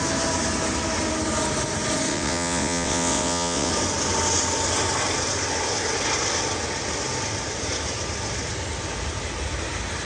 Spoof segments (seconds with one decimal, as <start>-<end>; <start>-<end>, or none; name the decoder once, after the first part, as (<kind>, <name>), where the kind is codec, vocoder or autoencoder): 2.1-3.7 (vocoder, WaveNeXt)